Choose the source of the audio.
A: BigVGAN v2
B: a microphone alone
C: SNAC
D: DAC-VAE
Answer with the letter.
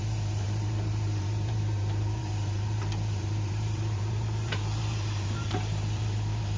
A